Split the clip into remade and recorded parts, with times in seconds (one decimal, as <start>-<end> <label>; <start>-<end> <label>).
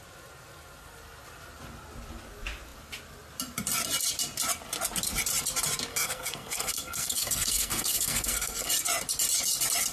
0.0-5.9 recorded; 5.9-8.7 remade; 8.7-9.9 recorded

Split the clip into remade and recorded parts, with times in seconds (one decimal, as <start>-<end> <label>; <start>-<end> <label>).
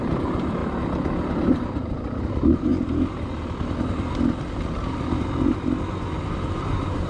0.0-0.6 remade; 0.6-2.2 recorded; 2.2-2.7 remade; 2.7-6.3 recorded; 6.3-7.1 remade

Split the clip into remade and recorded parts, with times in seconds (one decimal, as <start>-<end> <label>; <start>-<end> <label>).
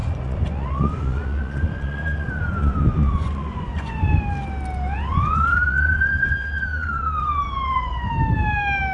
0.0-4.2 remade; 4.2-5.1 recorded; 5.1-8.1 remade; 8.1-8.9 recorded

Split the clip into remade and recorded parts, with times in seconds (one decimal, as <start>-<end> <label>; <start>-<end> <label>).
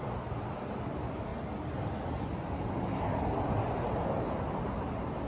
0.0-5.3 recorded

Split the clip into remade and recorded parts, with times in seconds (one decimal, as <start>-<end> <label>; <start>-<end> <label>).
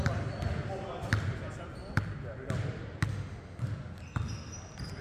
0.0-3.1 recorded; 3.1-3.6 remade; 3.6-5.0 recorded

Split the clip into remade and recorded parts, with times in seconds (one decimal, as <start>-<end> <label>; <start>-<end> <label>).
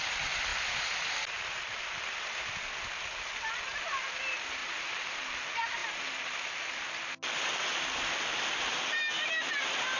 0.0-4.6 recorded; 4.6-5.2 remade; 5.2-5.8 recorded; 5.8-6.6 remade; 6.6-10.0 recorded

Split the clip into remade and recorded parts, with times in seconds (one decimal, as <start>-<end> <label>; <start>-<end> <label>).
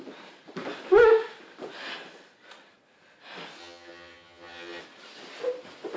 0.0-3.6 recorded; 3.6-4.8 remade; 4.8-6.0 recorded